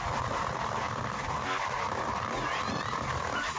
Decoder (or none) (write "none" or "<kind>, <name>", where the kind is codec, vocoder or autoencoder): none